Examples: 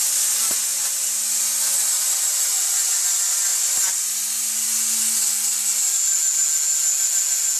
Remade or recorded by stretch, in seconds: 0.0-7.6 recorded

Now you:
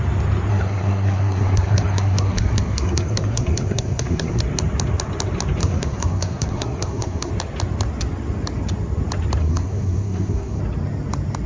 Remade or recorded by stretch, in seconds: 0.0-0.5 recorded; 0.5-4.4 remade; 4.4-5.6 recorded; 5.6-7.3 remade; 7.3-9.4 recorded; 9.4-10.6 remade; 10.6-11.5 recorded

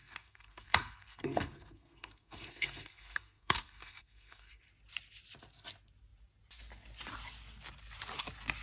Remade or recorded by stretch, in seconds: 0.0-4.6 remade; 4.6-8.6 recorded